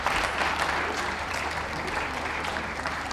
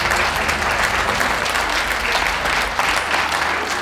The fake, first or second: first